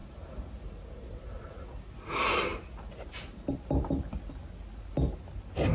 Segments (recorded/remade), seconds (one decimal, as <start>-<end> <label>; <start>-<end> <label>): 0.0-5.7 recorded

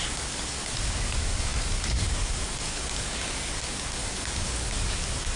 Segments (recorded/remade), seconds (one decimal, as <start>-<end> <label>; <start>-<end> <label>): 0.0-5.4 remade